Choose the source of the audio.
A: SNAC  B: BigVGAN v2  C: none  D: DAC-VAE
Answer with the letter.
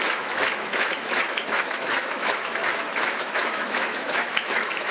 D